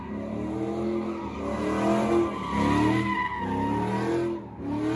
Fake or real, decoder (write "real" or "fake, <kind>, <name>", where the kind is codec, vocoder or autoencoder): real